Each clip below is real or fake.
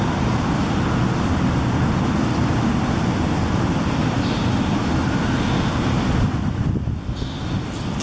real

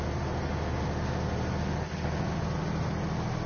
real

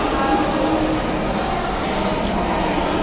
real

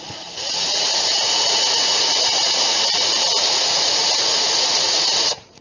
fake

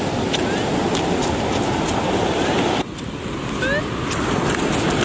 real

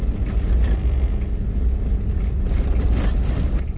real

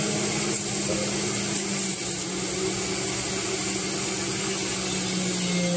real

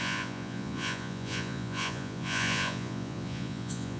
fake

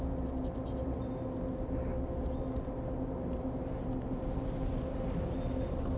real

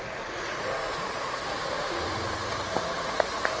fake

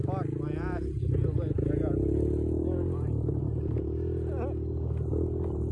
real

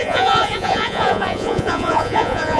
fake